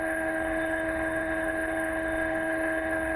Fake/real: fake